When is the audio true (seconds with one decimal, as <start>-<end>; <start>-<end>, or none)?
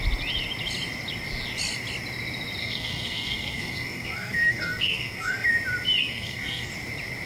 0.0-2.6; 5.5-6.0; 6.7-7.3